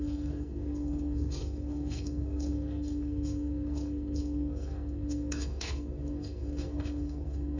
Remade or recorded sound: remade